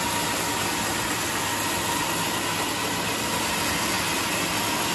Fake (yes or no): no